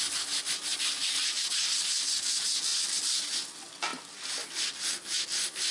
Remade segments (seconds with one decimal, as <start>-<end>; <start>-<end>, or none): none